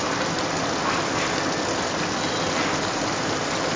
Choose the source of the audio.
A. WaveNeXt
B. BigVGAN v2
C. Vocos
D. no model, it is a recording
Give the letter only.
D